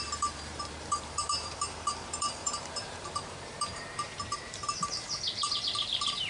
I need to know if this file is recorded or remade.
remade